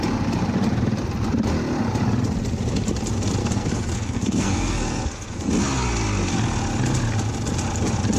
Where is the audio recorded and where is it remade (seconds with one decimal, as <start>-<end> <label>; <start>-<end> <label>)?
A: 0.0-3.4 recorded; 3.4-5.5 remade; 5.5-8.2 recorded

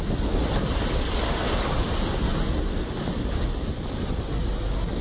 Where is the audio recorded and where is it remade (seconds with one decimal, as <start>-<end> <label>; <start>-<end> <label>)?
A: 0.0-5.0 recorded

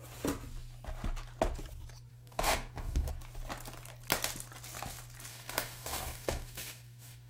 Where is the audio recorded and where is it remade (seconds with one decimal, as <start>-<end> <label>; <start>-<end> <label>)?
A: 0.0-2.1 recorded; 2.1-3.1 remade; 3.1-5.3 recorded; 5.3-7.3 remade

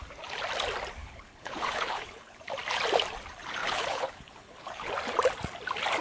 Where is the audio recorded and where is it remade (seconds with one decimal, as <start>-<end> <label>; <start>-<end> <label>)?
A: 0.0-1.0 recorded; 1.0-2.4 remade; 2.4-3.6 recorded; 3.6-4.9 remade; 4.9-6.0 recorded

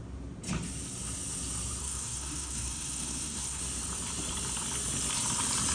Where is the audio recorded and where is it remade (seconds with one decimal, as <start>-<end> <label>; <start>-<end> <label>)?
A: 0.0-1.8 recorded; 1.8-3.6 remade; 3.6-5.7 recorded

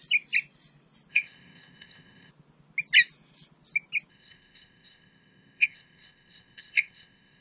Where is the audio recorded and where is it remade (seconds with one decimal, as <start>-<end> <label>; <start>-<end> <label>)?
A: 0.0-1.1 recorded; 1.1-2.3 remade; 2.3-4.1 recorded; 4.1-7.4 remade

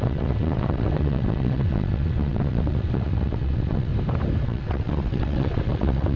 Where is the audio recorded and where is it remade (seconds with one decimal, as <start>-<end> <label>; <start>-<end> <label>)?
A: 0.0-3.9 remade; 3.9-4.4 recorded; 4.4-6.2 remade

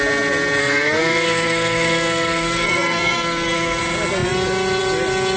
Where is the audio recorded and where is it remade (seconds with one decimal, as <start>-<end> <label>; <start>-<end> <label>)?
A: 0.0-0.6 recorded; 0.6-3.8 remade; 3.8-5.4 recorded